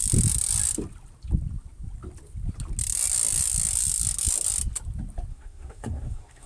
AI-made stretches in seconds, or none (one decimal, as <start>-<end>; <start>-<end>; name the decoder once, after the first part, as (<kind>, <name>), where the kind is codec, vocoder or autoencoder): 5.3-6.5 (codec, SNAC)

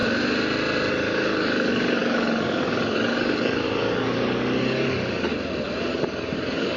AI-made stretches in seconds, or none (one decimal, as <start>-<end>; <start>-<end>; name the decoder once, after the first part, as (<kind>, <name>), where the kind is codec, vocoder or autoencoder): 0.9-5.3 (codec, DAC); 5.9-6.8

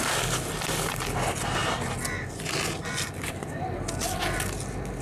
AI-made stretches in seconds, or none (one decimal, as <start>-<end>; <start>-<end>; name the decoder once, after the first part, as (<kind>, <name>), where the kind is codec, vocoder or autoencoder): none

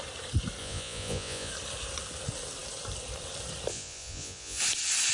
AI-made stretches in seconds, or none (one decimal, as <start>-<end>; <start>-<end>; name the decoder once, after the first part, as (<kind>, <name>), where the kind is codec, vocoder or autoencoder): 0.6-1.5 (vocoder, Vocos); 3.7-4.6

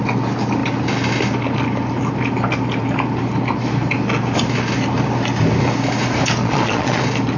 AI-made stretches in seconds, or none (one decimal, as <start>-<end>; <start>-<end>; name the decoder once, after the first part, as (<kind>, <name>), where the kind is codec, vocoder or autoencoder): 6.4-7.0 (vocoder, Vocos)